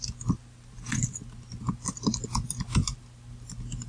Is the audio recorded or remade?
recorded